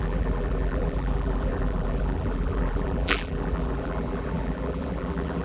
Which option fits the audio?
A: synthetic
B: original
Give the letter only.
A